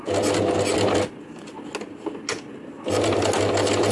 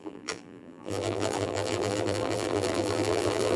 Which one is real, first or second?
first